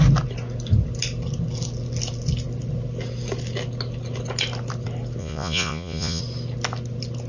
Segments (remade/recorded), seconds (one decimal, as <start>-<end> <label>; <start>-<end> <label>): 0.0-5.2 recorded; 5.2-6.2 remade; 6.2-7.3 recorded